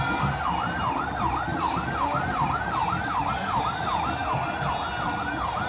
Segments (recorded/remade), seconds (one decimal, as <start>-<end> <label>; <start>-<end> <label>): 0.0-5.7 recorded